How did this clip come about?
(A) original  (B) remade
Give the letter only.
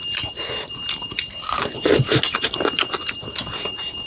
A